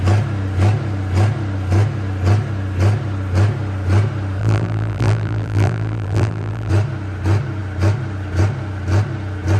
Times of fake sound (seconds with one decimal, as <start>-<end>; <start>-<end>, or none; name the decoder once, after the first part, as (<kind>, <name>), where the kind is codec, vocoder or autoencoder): 4.4-6.7 (vocoder, BigVGAN v2)